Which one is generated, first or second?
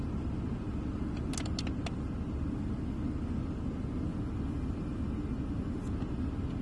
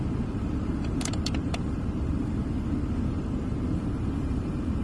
second